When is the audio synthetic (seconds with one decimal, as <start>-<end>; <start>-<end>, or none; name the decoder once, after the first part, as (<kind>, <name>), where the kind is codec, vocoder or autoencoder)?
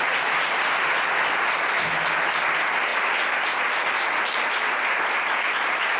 none